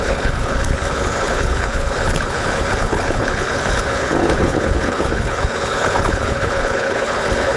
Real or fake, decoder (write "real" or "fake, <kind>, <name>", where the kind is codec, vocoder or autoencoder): fake, codec, HILCodec